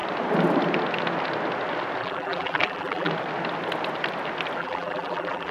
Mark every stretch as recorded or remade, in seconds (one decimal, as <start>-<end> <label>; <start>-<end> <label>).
0.0-2.0 recorded; 2.0-3.1 remade; 3.1-4.6 recorded; 4.6-5.5 remade